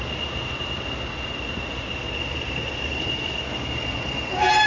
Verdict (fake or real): real